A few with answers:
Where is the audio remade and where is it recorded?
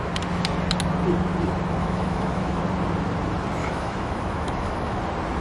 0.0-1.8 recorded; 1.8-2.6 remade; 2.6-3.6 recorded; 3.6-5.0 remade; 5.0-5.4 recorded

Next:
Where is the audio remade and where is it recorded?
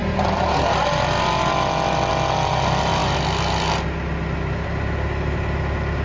0.0-6.0 recorded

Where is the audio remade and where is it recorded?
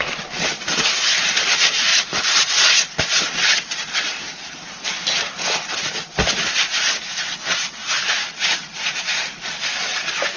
0.0-1.9 recorded; 1.9-3.2 remade; 3.2-7.8 recorded; 7.8-8.4 remade; 8.4-10.4 recorded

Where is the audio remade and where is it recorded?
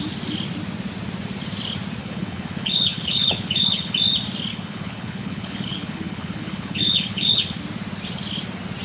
0.0-2.0 recorded; 2.0-3.9 remade; 3.9-4.5 recorded; 4.5-7.6 remade; 7.6-8.8 recorded